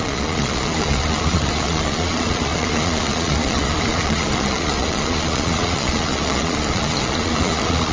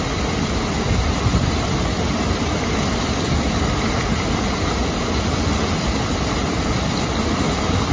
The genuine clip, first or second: second